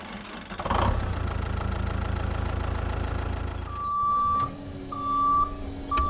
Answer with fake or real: real